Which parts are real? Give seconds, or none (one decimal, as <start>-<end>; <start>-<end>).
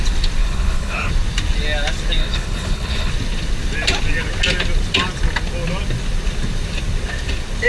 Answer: 0.0-0.4; 1.1-2.2; 3.1-7.7